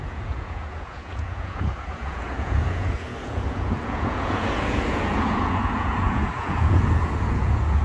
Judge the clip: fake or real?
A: fake